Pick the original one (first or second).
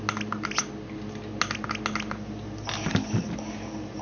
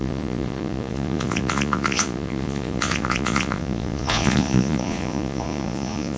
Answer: first